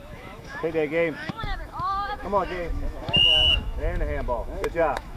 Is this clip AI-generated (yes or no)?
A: yes